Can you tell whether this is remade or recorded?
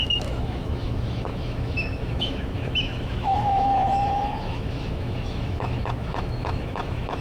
remade